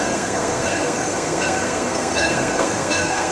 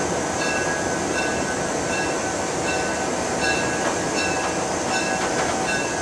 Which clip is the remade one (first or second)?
first